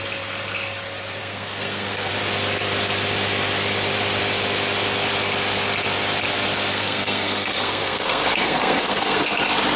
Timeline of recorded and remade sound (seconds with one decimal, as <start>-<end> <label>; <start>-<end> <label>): 0.0-1.2 recorded; 1.2-2.1 remade; 2.1-6.7 recorded; 6.7-9.4 remade; 9.4-9.8 recorded